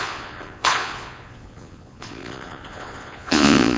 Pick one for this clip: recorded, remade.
remade